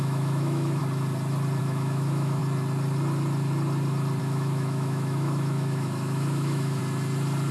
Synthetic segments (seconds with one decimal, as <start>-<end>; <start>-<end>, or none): 0.0-0.8; 1.6-2.4; 4.2-6.8